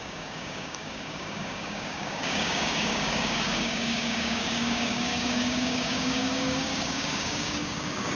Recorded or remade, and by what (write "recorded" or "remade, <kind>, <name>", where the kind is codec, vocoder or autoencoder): remade, codec, DAC